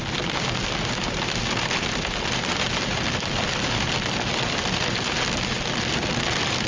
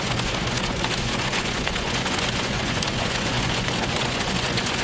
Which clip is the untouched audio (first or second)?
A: first